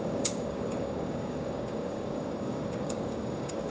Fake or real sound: fake